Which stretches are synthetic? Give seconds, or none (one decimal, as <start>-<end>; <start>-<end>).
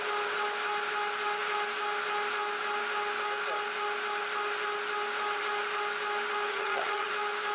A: 6.5-7.1